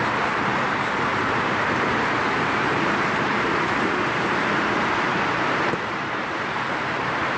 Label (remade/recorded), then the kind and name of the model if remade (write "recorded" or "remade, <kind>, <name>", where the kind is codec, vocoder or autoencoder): remade, vocoder, BigVGAN v2